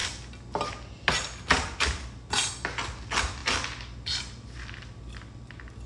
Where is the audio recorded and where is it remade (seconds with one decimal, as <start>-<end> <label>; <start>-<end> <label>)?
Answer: 0.0-5.9 recorded